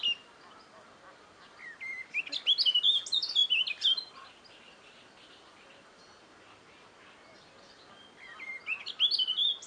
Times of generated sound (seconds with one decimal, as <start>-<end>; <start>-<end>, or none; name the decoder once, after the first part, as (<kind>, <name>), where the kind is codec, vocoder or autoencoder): none